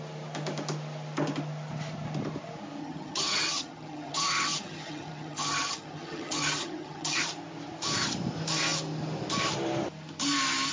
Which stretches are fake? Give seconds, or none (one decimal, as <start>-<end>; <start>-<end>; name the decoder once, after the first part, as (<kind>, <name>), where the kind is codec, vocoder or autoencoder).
2.8-7.2 (vocoder, HiFi-GAN)